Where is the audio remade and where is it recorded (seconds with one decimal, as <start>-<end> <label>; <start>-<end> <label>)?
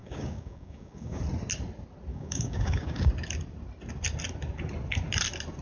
0.0-1.2 remade; 1.2-2.1 recorded; 2.1-3.1 remade; 3.1-5.6 recorded